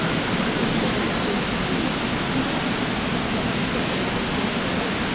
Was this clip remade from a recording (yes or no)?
no